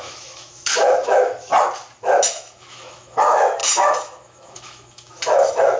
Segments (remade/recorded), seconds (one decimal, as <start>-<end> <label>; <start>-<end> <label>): 0.0-1.5 remade; 1.5-2.0 recorded; 2.0-5.8 remade